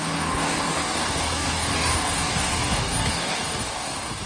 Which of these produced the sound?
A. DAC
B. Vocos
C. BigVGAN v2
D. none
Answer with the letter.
A